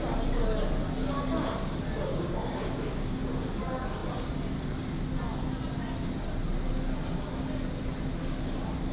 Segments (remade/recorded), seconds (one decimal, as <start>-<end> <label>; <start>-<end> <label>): 0.0-2.1 recorded; 2.1-3.3 remade; 3.3-8.9 recorded